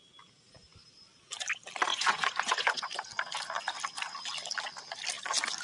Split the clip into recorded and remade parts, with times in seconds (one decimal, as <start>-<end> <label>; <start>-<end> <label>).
0.0-1.9 recorded; 1.9-2.9 remade; 2.9-5.6 recorded

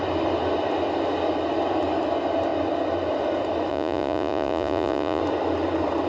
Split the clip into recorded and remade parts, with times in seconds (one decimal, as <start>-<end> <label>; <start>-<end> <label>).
0.0-3.7 recorded; 3.7-5.2 remade; 5.2-6.1 recorded

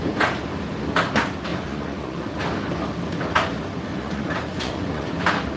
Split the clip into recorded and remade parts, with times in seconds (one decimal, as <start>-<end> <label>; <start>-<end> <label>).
0.0-1.5 recorded; 1.5-2.3 remade; 2.3-3.9 recorded; 3.9-5.1 remade; 5.1-5.6 recorded

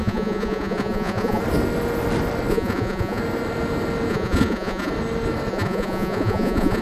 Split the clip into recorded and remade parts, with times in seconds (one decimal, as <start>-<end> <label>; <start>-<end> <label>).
0.0-1.4 remade; 1.4-2.5 recorded; 2.5-3.2 remade; 3.2-4.1 recorded; 4.1-4.9 remade; 4.9-5.5 recorded; 5.5-6.8 remade

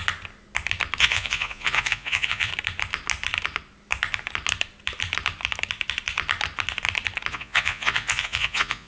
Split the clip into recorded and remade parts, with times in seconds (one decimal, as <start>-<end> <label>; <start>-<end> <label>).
0.0-1.0 recorded; 1.0-2.5 remade; 2.5-7.3 recorded; 7.3-8.9 remade

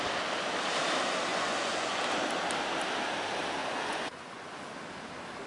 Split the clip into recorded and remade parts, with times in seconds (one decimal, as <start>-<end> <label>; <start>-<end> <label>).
0.0-1.3 recorded; 1.3-2.0 remade; 2.0-3.6 recorded; 3.6-4.6 remade; 4.6-5.5 recorded

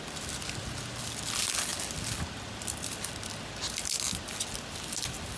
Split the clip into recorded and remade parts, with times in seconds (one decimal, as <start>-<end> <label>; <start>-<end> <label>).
0.0-5.4 recorded

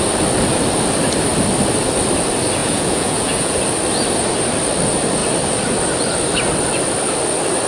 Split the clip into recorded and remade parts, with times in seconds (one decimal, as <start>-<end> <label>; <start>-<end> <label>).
0.0-2.6 recorded; 2.6-3.6 remade; 3.6-7.7 recorded